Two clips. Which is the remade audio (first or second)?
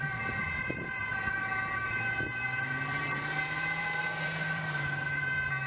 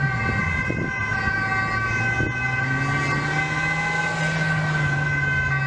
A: first